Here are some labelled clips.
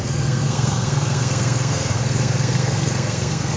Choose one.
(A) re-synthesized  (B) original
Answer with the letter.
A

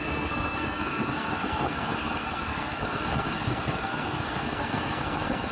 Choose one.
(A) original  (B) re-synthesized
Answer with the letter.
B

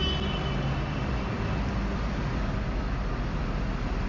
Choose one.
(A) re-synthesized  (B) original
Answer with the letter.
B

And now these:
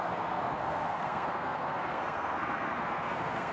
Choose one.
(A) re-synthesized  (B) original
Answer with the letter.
A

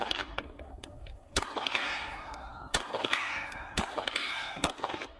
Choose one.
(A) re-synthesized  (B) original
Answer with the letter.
A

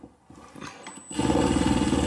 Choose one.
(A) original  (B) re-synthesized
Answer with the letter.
A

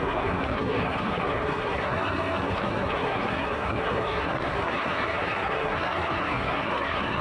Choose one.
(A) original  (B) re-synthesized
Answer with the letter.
B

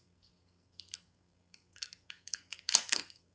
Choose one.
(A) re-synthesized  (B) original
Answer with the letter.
A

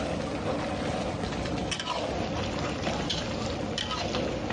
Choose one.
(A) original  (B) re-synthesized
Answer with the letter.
A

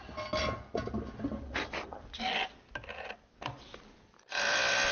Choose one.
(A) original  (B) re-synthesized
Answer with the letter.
A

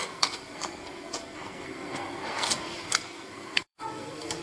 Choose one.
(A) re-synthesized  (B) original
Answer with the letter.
A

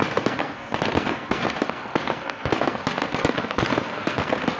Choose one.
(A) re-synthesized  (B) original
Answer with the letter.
A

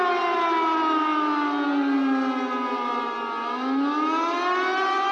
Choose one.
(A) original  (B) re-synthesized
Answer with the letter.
A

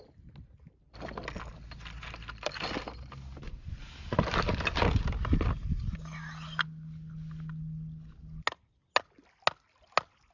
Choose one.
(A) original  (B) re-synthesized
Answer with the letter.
A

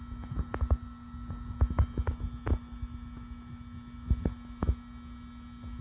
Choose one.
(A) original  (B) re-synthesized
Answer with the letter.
A